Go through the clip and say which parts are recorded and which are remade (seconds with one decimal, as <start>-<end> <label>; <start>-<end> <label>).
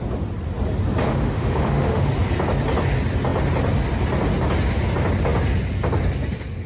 0.0-1.0 recorded; 1.0-2.1 remade; 2.1-6.7 recorded